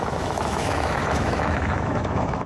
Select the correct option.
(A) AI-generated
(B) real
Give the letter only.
A